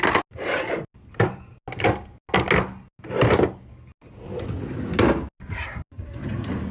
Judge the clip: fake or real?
real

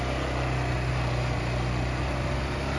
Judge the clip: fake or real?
real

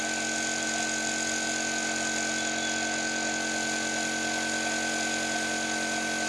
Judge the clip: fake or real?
real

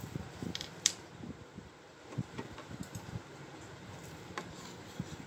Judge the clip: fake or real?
fake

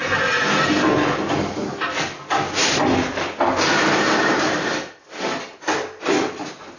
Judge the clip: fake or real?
real